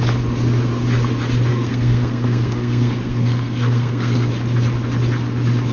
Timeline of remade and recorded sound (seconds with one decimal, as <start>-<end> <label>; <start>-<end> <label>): 0.0-1.5 recorded; 1.5-4.3 remade; 4.3-5.7 recorded